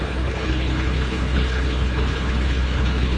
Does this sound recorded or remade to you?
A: remade